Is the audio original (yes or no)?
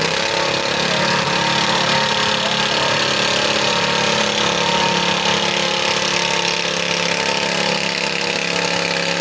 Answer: yes